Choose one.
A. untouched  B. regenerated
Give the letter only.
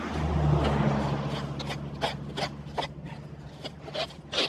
A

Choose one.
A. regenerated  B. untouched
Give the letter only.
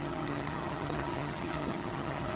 A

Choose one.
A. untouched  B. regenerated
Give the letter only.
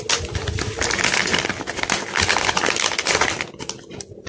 A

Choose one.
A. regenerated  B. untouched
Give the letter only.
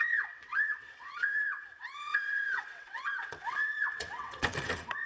A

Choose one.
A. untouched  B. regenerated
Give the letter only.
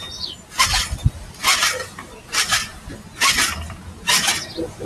A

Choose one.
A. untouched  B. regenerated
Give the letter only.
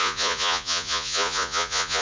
B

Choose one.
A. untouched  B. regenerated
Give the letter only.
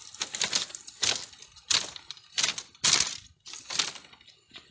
A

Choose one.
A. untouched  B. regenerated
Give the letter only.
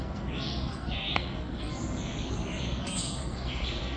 B